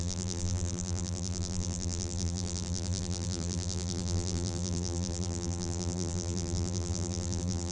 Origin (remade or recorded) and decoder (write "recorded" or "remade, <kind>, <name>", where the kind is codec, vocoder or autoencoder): remade, vocoder, BigVGAN v2